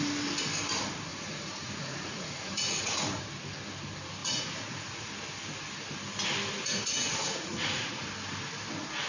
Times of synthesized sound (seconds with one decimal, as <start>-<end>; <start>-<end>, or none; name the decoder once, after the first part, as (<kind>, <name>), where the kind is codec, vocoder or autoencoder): 1.1-3.2 (vocoder, Vocos); 4.2-5.1; 6.6-8.1